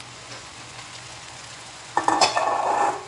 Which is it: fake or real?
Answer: fake